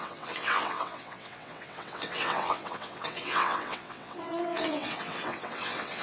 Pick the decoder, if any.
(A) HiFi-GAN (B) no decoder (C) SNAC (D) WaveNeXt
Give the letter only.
D